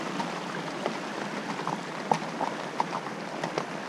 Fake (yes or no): no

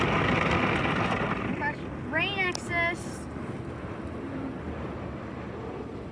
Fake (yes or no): no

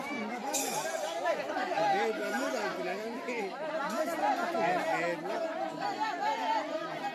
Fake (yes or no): no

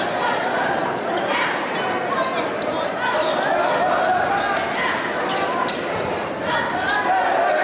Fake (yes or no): no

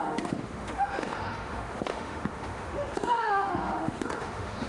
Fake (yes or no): yes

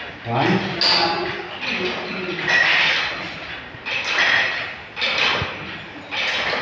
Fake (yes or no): no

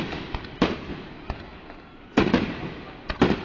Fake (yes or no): no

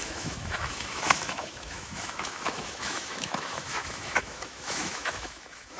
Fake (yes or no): yes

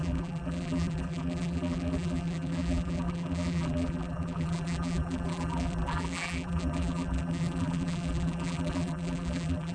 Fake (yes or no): yes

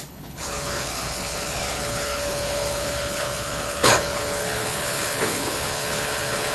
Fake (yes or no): yes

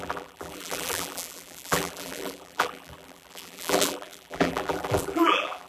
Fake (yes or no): yes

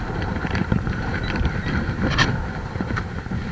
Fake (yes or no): yes